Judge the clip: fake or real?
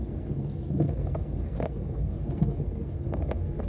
fake